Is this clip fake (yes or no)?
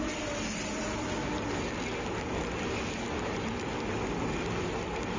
no